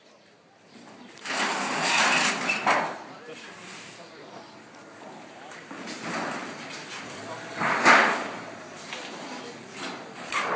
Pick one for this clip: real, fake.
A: real